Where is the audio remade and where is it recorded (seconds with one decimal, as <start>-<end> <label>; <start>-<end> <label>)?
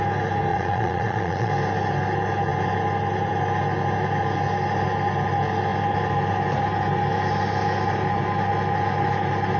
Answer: 0.0-0.5 recorded; 0.5-1.5 remade; 1.5-9.6 recorded